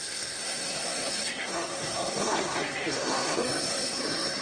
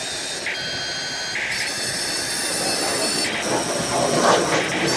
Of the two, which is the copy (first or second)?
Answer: first